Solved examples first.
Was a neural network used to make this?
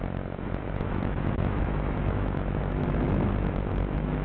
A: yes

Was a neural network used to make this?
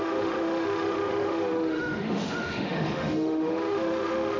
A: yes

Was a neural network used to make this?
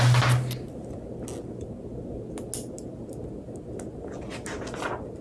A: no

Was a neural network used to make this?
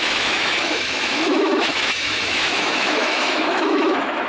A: yes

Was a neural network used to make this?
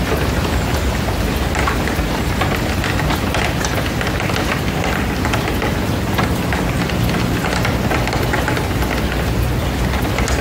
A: no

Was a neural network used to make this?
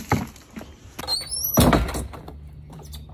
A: no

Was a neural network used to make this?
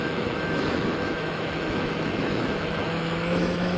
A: yes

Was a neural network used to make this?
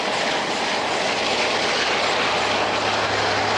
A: no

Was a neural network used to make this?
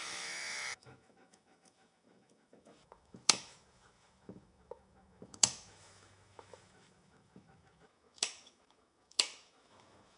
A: yes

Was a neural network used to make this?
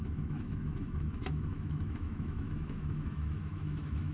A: yes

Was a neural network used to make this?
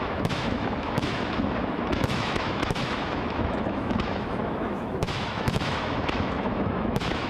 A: yes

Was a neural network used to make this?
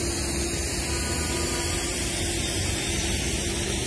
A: no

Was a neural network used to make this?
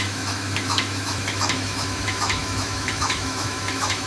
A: yes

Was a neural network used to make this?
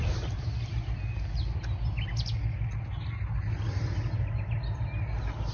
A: no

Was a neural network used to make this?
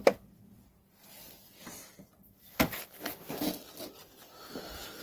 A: no